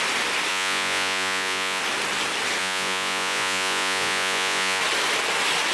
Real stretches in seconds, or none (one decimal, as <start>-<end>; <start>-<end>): 0.0-0.5; 1.8-2.6; 4.8-5.7